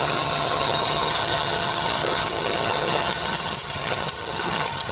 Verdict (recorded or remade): remade